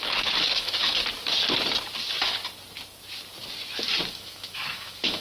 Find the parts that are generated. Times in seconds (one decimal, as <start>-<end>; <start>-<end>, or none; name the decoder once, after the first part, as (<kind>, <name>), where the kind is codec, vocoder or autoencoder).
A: 0.0-1.0 (autoencoder, DAC-VAE); 4.1-5.2